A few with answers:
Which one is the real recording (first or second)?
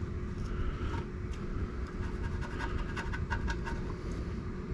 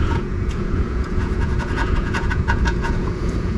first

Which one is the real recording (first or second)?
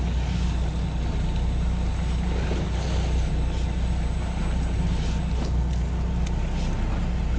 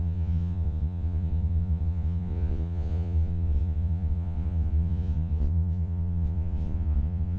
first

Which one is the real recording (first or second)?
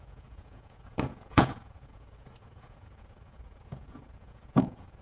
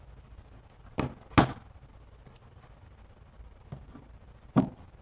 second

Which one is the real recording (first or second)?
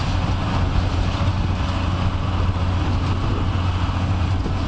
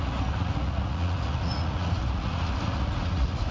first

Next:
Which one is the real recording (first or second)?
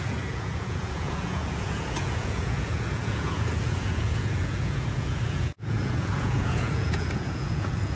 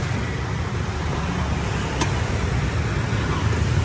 second